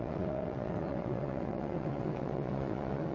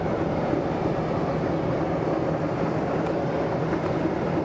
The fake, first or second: first